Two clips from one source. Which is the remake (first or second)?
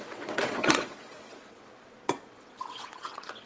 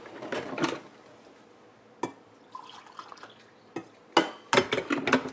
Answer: first